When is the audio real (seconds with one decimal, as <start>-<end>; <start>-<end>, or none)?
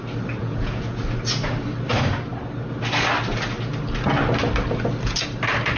0.0-0.4; 1.0-5.8